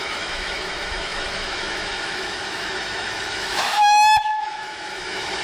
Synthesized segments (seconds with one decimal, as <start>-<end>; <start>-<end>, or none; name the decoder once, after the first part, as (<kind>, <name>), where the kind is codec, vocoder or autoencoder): 0.0-5.4 (autoencoder, DAC-VAE)